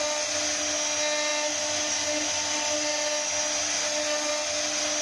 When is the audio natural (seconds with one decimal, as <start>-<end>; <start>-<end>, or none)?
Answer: 0.0-5.0